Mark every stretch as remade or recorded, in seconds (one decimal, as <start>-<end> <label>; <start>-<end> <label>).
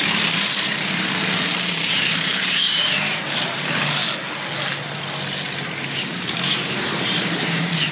0.0-4.0 remade; 4.0-5.9 recorded; 5.9-7.9 remade